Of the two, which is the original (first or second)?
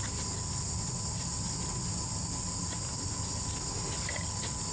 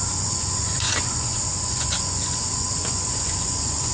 first